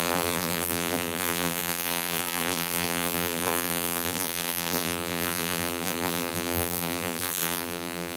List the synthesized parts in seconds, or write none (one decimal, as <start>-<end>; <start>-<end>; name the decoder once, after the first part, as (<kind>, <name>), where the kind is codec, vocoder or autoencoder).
0.0-8.2 (vocoder, BigVGAN v2)